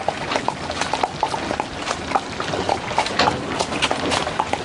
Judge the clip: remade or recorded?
recorded